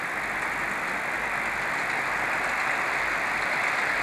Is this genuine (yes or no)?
no